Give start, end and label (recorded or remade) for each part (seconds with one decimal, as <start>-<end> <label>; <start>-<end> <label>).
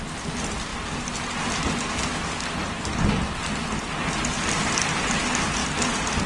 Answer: 0.0-6.3 recorded